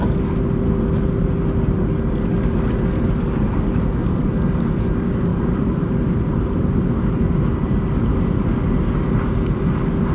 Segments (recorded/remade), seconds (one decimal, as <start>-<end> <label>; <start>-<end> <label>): 0.0-5.3 recorded; 5.3-7.1 remade; 7.1-10.1 recorded